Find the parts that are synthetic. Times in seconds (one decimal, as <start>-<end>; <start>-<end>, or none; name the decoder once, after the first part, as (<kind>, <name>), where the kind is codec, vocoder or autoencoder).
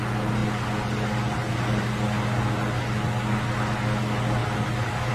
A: none